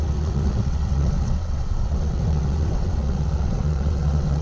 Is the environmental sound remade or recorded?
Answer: remade